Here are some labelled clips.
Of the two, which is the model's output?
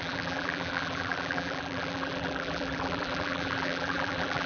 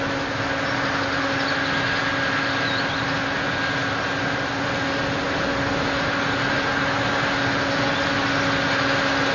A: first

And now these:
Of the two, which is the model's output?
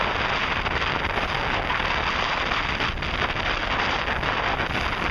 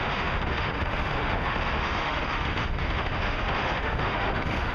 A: second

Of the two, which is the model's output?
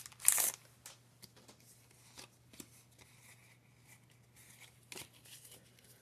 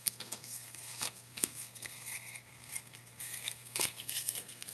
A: second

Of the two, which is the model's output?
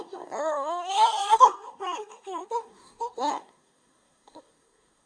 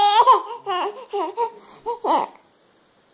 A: first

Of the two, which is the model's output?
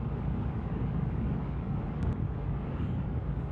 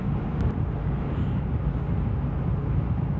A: first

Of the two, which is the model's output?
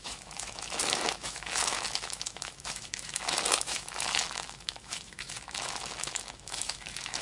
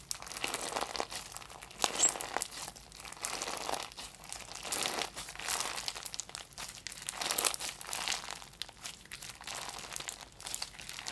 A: first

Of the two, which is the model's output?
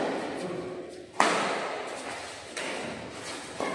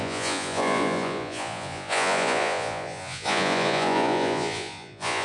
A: second